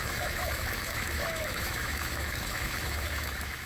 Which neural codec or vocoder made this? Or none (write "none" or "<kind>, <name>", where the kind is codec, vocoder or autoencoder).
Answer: autoencoder, DAC-VAE